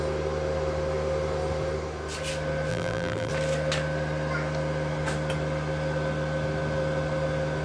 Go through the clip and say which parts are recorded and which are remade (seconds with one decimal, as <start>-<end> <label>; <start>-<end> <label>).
0.0-2.7 recorded; 2.7-3.3 remade; 3.3-7.6 recorded